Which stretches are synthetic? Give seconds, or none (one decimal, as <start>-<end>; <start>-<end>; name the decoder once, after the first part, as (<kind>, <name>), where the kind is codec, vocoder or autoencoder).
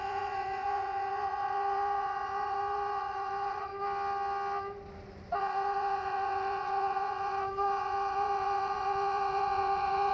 0.0-3.7 (vocoder, Vocos); 5.4-10.1